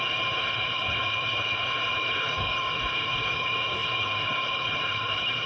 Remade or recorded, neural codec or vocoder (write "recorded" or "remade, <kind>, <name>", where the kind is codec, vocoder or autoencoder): remade, codec, HILCodec